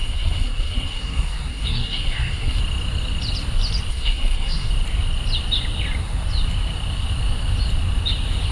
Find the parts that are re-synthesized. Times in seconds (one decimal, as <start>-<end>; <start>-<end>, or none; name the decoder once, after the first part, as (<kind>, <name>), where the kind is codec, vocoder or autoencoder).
0.0-2.6 (codec, SNAC); 3.9-4.7